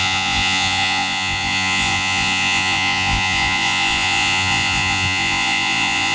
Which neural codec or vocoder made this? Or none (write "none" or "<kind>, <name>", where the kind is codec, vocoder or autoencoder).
vocoder, Vocos